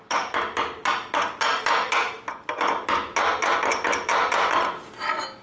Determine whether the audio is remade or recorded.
recorded